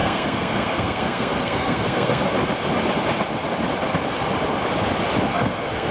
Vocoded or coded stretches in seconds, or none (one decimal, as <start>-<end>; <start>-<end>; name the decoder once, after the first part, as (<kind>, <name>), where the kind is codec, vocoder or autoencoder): 0.0-2.2 (codec, SNAC); 5.3-5.9